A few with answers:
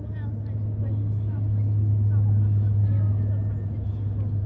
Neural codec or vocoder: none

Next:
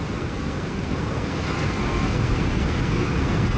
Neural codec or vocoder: codec, SNAC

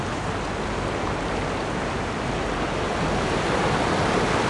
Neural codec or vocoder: none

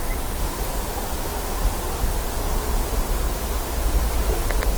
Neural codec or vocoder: none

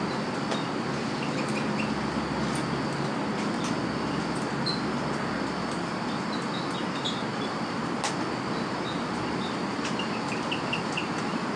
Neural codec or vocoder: none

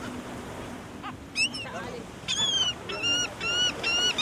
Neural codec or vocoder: none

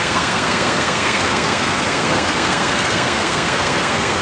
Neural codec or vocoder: codec, SNAC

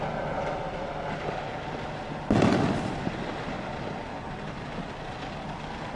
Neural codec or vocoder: none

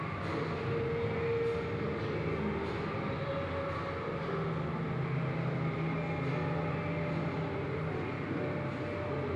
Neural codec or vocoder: none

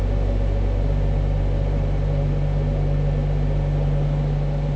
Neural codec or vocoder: none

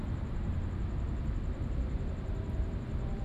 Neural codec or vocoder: none